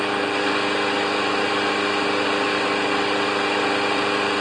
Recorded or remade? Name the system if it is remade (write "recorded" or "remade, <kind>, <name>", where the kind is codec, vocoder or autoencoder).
recorded